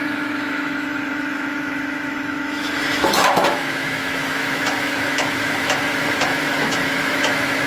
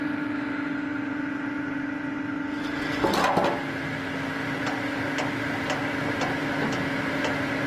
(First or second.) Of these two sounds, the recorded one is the second